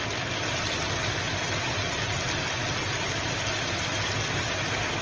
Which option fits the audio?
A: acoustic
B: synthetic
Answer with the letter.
A